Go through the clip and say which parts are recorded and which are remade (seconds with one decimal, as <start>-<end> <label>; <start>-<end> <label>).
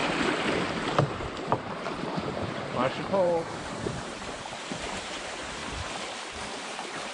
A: 0.0-5.6 remade; 5.6-6.6 recorded; 6.6-7.1 remade